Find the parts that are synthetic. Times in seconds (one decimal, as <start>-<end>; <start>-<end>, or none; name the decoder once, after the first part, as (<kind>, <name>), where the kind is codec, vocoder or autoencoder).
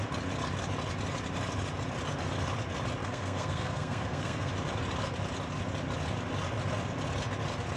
3.0-4.5 (codec, SNAC)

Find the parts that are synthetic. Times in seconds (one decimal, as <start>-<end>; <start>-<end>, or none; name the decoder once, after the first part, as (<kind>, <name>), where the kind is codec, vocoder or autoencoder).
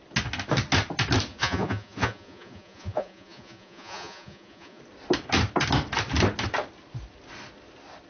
1.3-4.8 (vocoder, Vocos)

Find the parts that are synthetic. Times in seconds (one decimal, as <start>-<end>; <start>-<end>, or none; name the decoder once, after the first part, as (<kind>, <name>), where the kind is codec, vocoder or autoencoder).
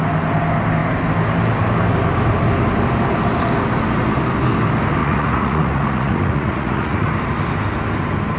5.0-7.1 (vocoder, Vocos)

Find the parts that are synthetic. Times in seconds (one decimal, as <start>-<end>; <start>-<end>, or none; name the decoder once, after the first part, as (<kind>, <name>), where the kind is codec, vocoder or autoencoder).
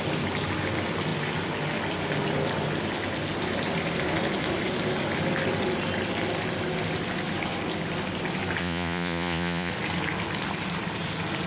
8.6-9.7 (vocoder, Vocos)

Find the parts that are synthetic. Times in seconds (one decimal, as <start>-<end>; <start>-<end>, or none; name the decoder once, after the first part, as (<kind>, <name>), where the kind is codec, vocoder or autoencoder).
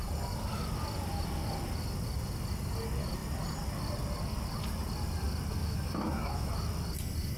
5.6-6.5 (autoencoder, DAC-VAE)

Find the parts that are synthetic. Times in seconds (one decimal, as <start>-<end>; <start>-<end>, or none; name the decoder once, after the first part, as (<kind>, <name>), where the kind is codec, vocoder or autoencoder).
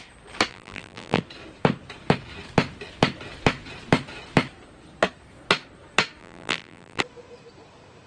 0.5-1.2 (vocoder, BigVGAN v2); 6.2-7.0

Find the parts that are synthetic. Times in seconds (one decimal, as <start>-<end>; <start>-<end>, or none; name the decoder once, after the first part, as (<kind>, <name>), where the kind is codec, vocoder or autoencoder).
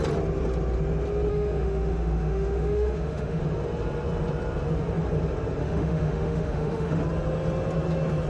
1.3-3.4 (autoencoder, DAC-VAE); 5.6-7.0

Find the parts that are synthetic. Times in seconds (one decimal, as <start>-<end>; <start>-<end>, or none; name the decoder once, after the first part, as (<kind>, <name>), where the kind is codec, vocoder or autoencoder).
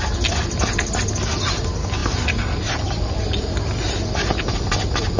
none